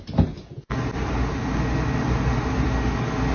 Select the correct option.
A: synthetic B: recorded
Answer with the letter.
B